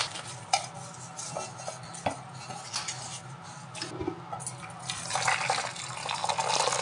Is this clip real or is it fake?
real